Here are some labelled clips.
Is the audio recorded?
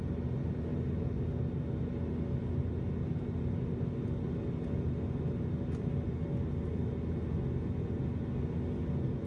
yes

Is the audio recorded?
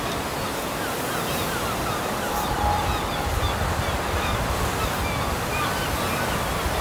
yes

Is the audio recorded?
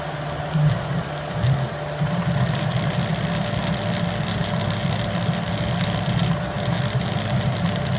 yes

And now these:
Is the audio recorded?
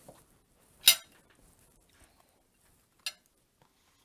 yes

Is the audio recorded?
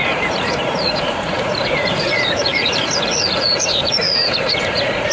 no